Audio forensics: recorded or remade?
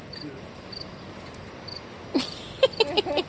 recorded